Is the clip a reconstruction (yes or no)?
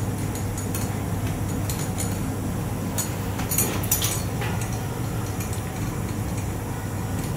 no